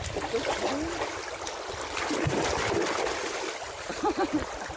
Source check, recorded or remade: recorded